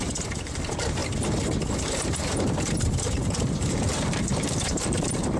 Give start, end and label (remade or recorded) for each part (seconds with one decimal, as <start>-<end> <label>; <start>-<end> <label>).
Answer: 0.0-1.0 remade; 1.0-1.8 recorded; 1.8-5.4 remade

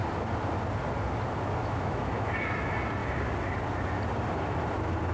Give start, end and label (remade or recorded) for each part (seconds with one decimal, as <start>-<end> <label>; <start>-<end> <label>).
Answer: 0.0-1.6 recorded; 1.6-2.3 remade; 2.3-5.1 recorded

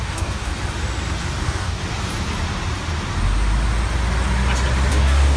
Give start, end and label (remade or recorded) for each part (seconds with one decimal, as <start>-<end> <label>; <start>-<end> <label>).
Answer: 0.0-0.5 remade; 0.5-1.4 recorded; 1.4-1.8 remade; 1.8-4.9 recorded; 4.9-5.4 remade

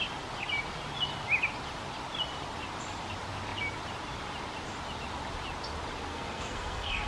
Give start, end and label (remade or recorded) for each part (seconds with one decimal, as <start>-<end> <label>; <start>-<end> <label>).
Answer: 0.0-6.1 recorded; 6.1-7.1 remade

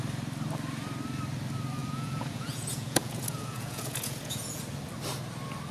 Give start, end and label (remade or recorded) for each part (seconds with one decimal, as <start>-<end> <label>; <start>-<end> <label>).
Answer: 0.0-1.8 recorded; 1.8-4.6 remade; 4.6-5.7 recorded

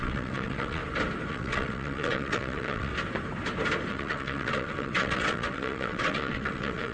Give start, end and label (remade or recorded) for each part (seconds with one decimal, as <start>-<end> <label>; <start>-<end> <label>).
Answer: 0.0-0.8 remade; 0.8-1.3 recorded; 1.3-2.9 remade; 2.9-3.9 recorded; 3.9-6.9 remade

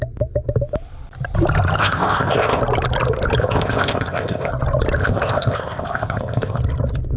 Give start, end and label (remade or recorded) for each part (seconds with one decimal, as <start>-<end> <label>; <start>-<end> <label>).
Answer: 0.0-1.8 recorded; 1.8-2.6 remade; 2.6-3.4 recorded; 3.4-4.5 remade; 4.5-5.0 recorded; 5.0-6.6 remade; 6.6-7.2 recorded